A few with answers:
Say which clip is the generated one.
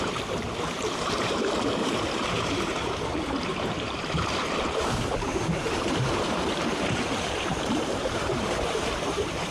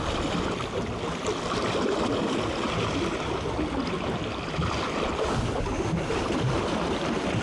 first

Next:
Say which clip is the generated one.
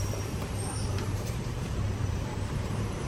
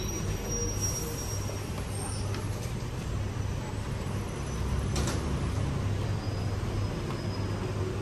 first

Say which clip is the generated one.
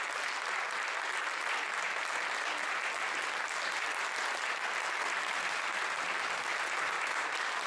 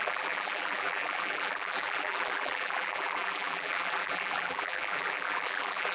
second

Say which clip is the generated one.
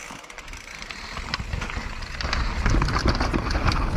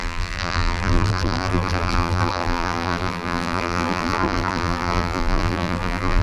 second